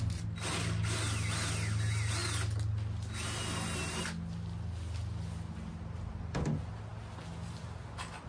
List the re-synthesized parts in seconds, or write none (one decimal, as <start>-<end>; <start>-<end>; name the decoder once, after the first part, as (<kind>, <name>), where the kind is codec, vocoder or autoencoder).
none